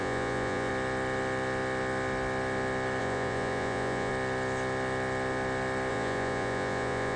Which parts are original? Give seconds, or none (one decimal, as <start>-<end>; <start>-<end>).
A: 0.7-3.0; 4.1-5.9